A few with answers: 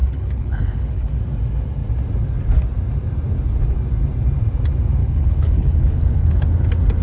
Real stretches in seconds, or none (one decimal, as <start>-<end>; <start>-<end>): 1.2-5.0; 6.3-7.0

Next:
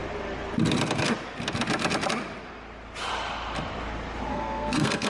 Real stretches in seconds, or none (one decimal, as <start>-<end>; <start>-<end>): 0.0-4.3

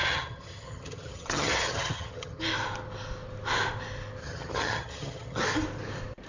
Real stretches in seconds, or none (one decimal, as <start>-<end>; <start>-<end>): 2.4-4.2; 5.4-6.3

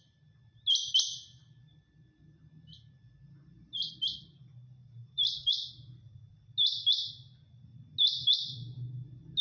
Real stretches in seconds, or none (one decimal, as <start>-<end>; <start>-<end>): 0.0-4.8; 6.4-9.4

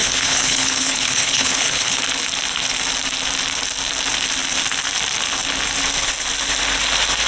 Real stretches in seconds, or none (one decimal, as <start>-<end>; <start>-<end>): 2.0-7.3